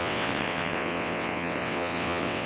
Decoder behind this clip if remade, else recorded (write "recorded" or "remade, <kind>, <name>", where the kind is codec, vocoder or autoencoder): remade, vocoder, WaveNeXt